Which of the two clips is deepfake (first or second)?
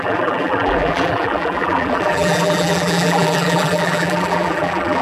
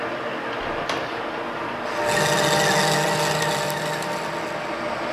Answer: first